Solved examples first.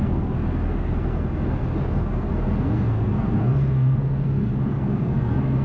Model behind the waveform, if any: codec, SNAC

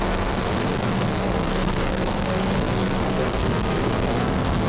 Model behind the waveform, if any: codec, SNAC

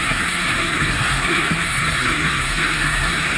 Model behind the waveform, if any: codec, SNAC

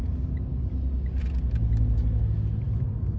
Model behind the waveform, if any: none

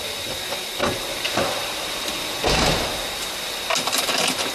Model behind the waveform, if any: none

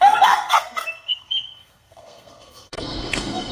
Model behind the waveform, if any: codec, SNAC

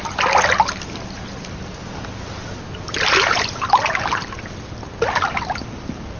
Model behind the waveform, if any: none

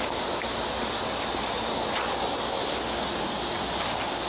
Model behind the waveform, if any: none